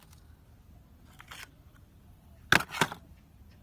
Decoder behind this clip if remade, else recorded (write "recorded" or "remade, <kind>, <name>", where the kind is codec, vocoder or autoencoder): recorded